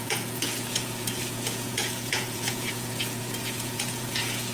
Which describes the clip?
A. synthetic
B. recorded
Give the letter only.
A